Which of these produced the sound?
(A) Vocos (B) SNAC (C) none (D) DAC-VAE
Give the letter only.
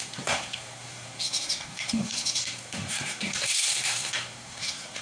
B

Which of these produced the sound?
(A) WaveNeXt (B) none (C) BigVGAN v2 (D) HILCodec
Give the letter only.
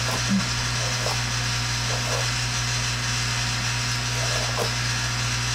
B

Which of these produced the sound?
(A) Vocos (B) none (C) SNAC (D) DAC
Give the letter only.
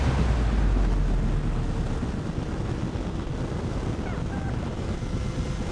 B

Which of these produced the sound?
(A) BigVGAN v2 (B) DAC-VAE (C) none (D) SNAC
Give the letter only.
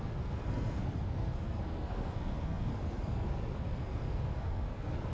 D